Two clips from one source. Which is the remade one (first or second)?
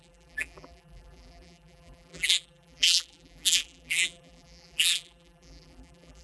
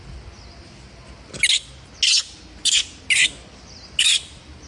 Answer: first